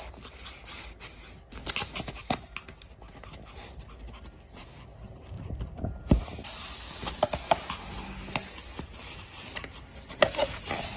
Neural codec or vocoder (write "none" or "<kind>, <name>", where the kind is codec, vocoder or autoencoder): none